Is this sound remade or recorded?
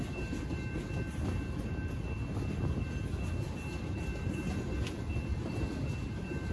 recorded